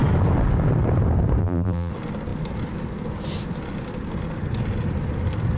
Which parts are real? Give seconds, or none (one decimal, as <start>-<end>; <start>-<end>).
0.0-1.4; 1.9-5.6